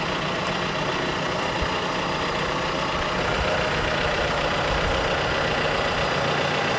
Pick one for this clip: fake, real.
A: real